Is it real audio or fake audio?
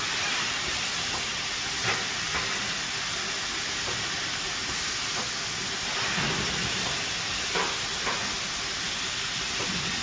real